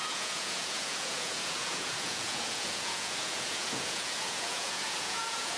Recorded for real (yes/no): no